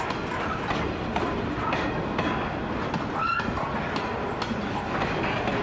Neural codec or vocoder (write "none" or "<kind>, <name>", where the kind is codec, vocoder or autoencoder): none